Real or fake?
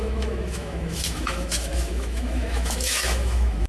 fake